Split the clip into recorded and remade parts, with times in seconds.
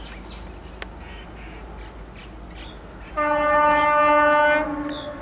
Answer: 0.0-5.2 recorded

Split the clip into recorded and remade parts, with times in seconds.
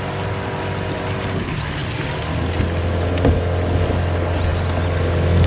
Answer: 0.0-5.5 recorded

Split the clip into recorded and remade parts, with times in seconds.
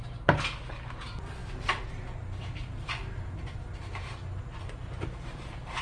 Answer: 0.0-5.8 recorded